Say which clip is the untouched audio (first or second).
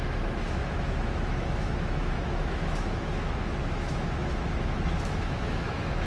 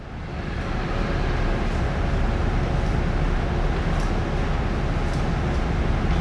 second